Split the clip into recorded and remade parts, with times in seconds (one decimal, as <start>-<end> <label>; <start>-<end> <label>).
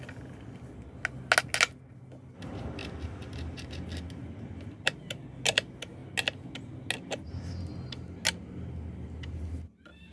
0.0-10.1 recorded